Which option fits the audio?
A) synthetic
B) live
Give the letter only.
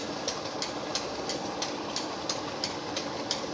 B